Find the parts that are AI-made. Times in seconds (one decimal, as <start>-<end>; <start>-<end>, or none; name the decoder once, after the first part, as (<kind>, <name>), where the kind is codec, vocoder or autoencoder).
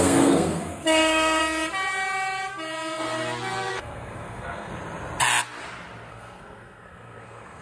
0.0-1.4 (codec, SNAC); 3.7-4.7; 6.1-7.6